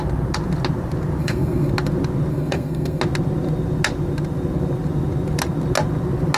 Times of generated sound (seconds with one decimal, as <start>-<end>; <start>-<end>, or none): 1.2-1.7; 2.3-3.0